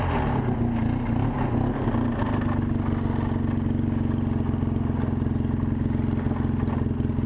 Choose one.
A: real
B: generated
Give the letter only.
A